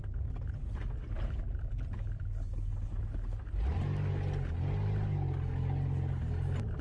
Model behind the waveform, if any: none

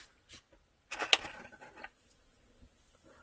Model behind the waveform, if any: none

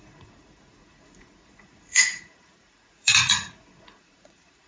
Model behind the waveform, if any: vocoder, Vocos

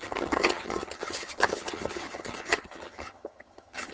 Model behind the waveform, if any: vocoder, HiFi-GAN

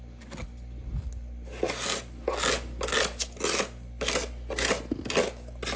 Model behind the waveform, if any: none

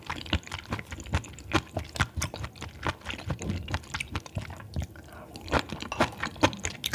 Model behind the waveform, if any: none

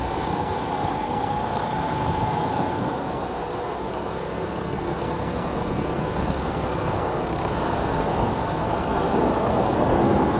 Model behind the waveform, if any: codec, SNAC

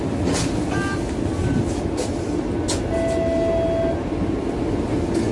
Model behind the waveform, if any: none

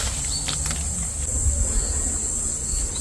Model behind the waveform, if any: none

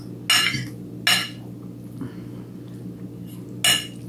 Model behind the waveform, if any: none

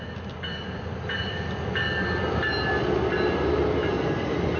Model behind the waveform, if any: none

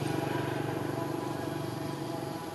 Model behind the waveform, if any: none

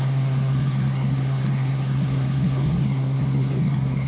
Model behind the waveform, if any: codec, SNAC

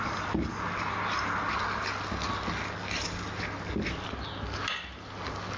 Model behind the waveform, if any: none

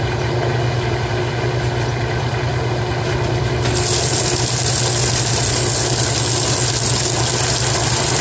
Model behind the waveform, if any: none